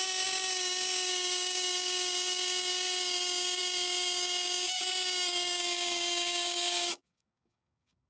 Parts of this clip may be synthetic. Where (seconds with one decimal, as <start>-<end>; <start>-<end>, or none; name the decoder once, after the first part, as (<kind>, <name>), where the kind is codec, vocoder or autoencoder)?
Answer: 0.0-8.1 (codec, DAC)